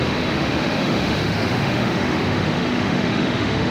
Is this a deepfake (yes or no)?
yes